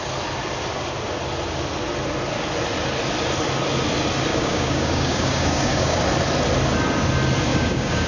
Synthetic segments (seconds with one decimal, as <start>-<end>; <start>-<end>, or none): 4.3-6.0; 7.5-8.1